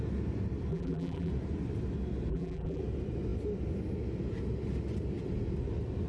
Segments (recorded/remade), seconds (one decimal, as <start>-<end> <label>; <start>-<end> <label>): 0.0-0.7 recorded; 0.7-1.3 remade; 1.3-2.3 recorded; 2.3-2.8 remade; 2.8-6.1 recorded

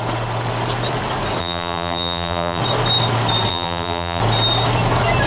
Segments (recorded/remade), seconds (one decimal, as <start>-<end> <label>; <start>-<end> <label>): 0.0-1.4 recorded; 1.4-2.6 remade; 2.6-3.5 recorded; 3.5-4.2 remade; 4.2-5.3 recorded

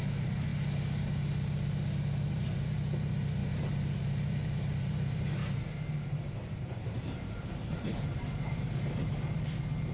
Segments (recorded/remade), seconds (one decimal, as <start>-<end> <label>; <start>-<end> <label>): 0.0-0.5 remade; 0.5-2.3 recorded; 2.3-3.4 remade; 3.4-4.0 recorded; 4.0-5.4 remade; 5.4-6.1 recorded; 6.1-9.9 remade

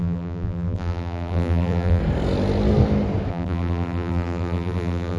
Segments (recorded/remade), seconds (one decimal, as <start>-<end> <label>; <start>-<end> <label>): 0.0-2.0 remade; 2.0-3.3 recorded; 3.3-5.2 remade